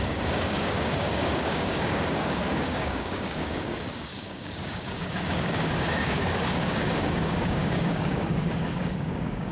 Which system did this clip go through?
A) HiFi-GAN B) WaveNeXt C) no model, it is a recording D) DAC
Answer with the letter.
D